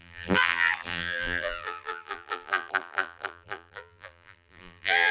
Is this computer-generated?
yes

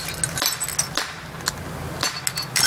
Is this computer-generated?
no